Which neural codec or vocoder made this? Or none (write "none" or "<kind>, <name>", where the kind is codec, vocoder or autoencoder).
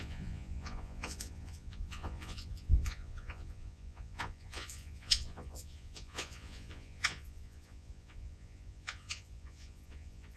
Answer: vocoder, Vocos